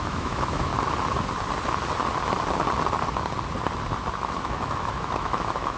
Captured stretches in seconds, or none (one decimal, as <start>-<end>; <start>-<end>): 0.7-4.2